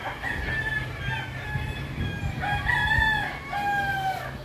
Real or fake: real